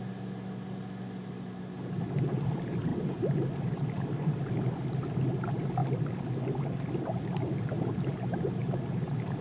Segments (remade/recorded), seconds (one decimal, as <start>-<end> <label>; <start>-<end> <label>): 0.0-9.4 recorded